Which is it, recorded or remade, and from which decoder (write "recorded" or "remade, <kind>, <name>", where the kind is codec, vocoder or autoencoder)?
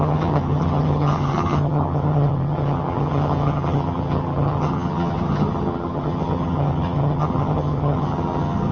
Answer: remade, vocoder, HiFi-GAN